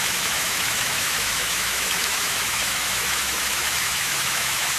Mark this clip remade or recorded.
remade